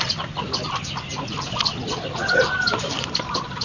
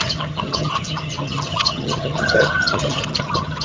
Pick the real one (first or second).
first